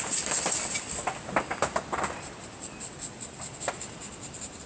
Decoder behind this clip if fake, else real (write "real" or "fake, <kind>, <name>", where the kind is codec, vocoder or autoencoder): real